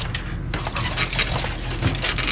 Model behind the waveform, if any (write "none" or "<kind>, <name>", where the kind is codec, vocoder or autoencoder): none